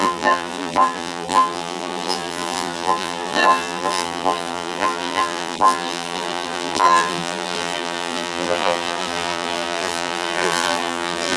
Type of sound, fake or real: fake